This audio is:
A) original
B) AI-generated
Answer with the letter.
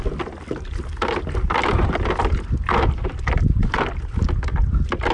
A